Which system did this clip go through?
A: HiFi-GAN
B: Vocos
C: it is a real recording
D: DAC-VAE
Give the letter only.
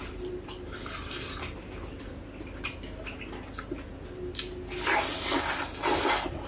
C